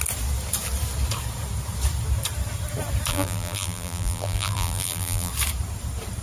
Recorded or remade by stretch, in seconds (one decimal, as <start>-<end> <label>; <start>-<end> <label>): 0.0-3.1 recorded; 3.1-5.3 remade; 5.3-6.2 recorded